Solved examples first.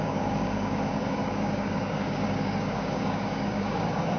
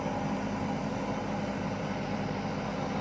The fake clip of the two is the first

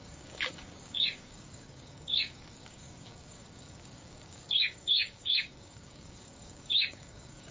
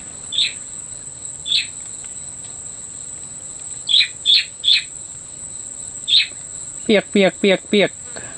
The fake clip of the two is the first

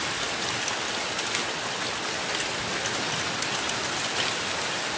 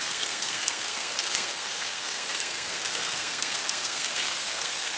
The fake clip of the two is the second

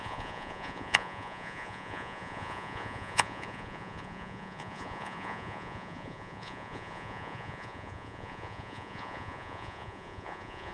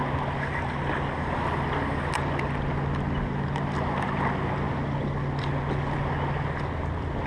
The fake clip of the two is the first